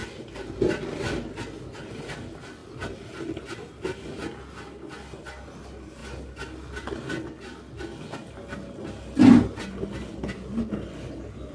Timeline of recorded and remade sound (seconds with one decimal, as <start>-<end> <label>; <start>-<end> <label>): 0.0-11.5 recorded